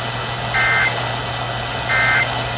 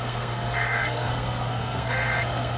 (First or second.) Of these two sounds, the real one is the first